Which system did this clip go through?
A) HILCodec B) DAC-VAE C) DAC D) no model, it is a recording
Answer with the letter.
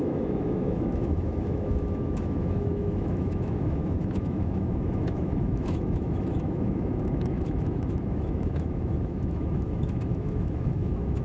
B